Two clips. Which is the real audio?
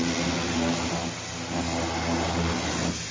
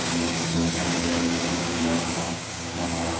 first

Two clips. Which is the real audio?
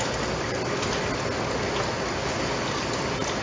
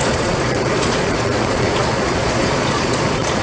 first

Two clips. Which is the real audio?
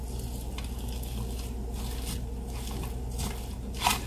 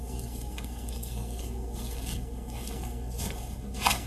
first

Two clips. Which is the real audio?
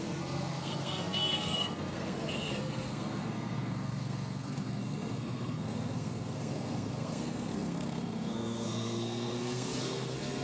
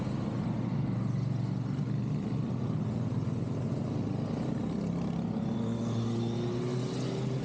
second